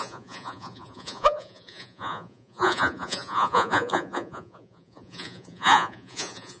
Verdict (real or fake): fake